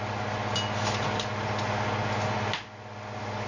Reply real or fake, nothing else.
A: real